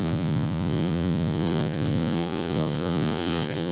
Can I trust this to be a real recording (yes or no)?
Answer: no